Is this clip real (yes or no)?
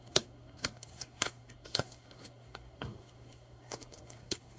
no